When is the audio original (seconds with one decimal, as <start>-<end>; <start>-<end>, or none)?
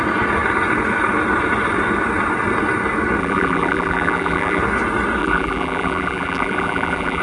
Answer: 0.0-3.2; 4.6-5.2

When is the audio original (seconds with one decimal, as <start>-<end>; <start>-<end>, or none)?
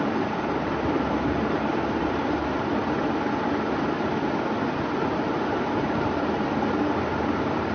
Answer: 2.8-5.0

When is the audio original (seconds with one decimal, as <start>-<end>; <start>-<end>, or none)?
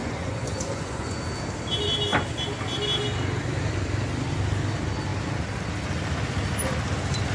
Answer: 1.2-7.3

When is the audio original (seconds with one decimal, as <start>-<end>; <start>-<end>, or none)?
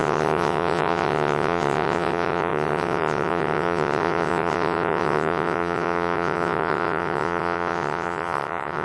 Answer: none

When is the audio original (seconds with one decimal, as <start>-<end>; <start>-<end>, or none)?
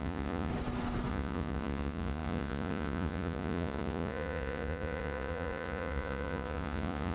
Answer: 0.5-1.1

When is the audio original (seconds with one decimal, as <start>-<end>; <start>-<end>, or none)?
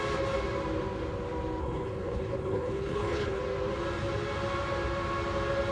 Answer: 0.0-1.6; 3.4-5.7